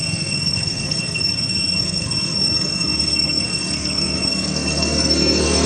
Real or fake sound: fake